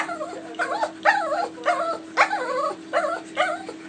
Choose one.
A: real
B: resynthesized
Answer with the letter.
A